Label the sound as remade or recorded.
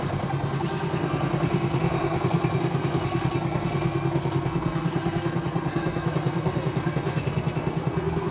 remade